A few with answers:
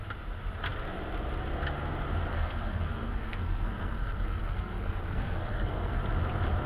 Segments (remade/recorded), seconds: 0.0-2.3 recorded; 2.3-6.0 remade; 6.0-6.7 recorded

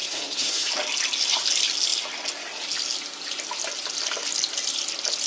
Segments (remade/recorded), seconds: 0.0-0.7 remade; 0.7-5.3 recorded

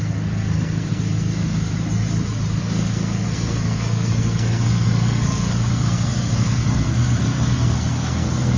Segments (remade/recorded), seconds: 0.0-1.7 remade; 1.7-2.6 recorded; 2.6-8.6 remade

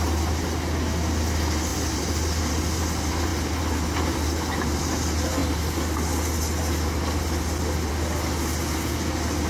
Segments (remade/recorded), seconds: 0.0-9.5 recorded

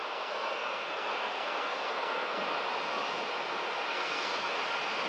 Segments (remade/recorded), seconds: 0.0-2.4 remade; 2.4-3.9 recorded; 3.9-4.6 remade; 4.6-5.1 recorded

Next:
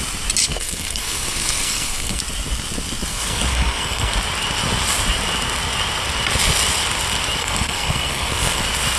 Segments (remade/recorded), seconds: 0.0-0.4 recorded; 0.4-2.2 remade; 2.2-3.1 recorded; 3.1-4.1 remade; 4.1-7.4 recorded; 7.4-8.6 remade; 8.6-9.0 recorded

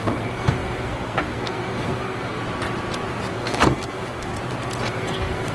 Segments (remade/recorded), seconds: 0.0-2.4 remade; 2.4-3.3 recorded; 3.3-4.3 remade; 4.3-4.9 recorded; 4.9-5.5 remade

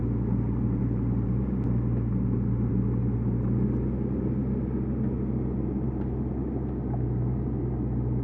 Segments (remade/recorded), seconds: 0.0-8.2 recorded